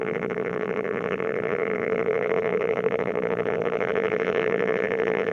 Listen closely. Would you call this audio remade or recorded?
remade